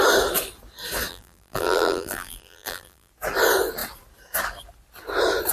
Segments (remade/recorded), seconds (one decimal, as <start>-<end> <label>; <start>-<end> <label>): 0.0-1.1 recorded; 1.1-3.1 remade; 3.1-5.5 recorded